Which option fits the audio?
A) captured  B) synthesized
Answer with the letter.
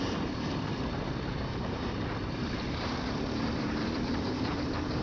B